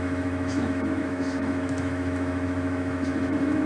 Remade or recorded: remade